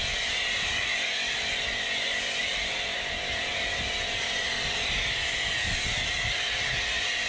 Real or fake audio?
real